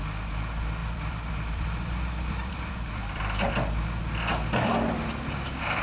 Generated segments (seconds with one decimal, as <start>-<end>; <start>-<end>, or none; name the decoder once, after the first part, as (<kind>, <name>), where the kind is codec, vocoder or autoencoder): 0.8-3.5 (vocoder, BigVGAN v2)